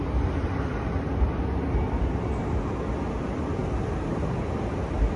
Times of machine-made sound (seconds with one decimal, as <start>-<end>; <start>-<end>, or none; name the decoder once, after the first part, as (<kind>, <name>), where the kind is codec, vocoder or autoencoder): none